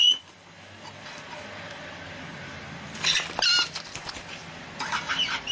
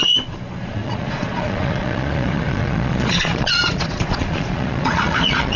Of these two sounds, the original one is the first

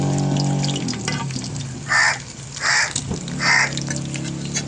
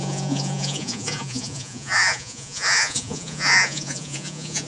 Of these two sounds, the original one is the first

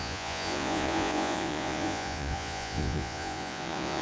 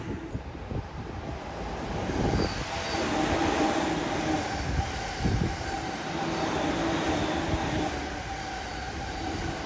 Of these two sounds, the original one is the second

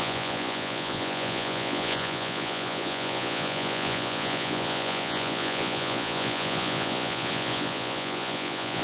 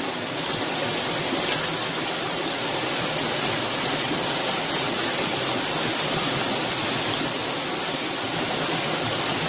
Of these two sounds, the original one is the second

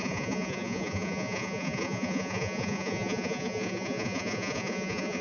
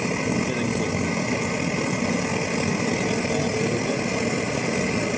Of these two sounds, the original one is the second